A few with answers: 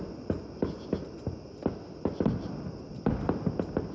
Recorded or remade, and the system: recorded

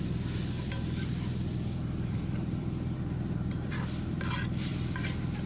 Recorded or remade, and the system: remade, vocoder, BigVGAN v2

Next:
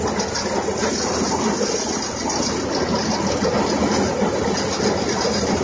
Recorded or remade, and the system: recorded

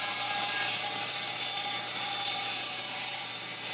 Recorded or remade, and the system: remade, vocoder, BigVGAN v2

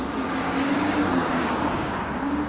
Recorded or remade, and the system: remade, codec, DAC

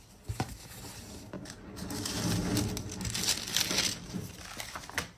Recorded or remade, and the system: recorded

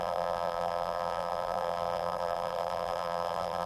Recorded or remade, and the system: remade, vocoder, BigVGAN v2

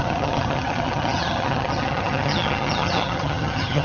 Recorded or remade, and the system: remade, vocoder, HiFi-GAN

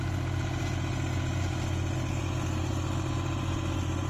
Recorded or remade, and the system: recorded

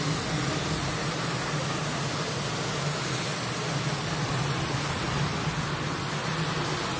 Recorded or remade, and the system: recorded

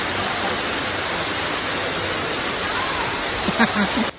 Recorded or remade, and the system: recorded